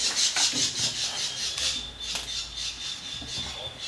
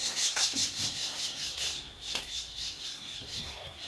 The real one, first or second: first